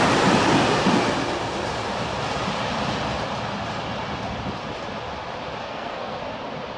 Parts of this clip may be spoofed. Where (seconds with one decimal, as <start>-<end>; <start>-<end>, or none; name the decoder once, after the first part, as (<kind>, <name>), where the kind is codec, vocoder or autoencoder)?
5.6-6.2 (codec, SNAC)